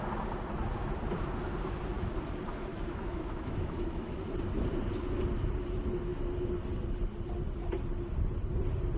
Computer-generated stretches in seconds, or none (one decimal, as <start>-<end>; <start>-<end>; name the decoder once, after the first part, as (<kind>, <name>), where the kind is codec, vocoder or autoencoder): 2.7-4.2 (autoencoder, DAC-VAE)